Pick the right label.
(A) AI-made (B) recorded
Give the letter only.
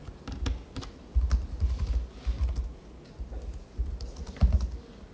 B